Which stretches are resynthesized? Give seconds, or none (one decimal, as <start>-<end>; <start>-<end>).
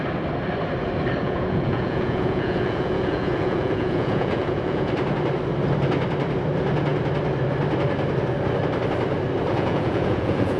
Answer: 1.2-4.9; 9.5-10.6